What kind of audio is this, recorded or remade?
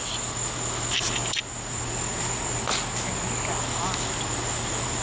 recorded